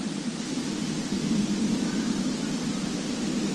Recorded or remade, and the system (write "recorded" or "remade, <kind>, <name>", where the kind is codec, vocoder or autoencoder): remade, vocoder, BigVGAN v2